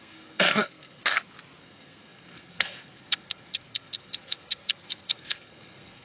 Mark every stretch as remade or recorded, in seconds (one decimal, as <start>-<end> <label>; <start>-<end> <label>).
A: 0.0-1.0 remade; 1.0-1.6 recorded; 1.6-6.0 remade